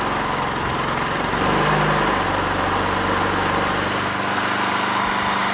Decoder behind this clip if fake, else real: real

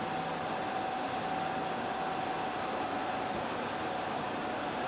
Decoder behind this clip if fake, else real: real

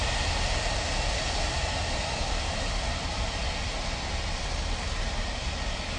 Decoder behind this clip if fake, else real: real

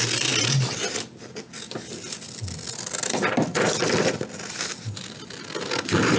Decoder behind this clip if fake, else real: real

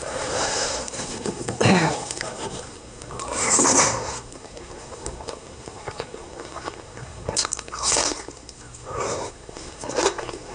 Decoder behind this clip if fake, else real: fake, codec, SNAC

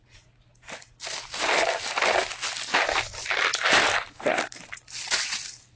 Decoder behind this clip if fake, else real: real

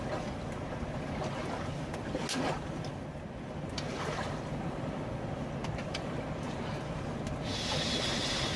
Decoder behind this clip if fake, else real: real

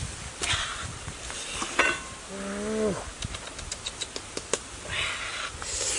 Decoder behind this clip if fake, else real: real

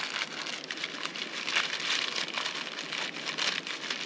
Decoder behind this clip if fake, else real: real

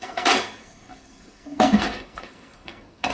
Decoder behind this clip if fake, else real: fake, codec, SNAC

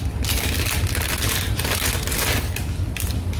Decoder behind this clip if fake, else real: real